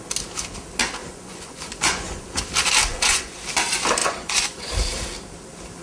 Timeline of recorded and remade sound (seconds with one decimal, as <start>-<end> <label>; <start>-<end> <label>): 0.0-1.0 recorded; 1.0-2.4 remade; 2.4-2.9 recorded; 2.9-3.4 remade; 3.4-4.0 recorded; 4.0-4.7 remade; 4.7-5.8 recorded